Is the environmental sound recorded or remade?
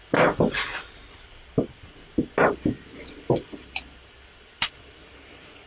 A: recorded